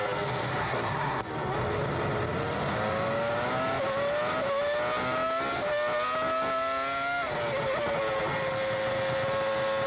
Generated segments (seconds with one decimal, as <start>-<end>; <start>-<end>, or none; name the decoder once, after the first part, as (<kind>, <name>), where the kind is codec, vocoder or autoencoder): 0.6-1.2 (codec, SNAC)